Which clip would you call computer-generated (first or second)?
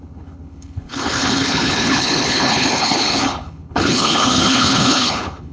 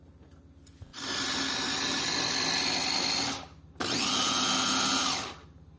first